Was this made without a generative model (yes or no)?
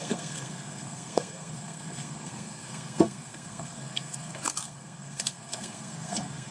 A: no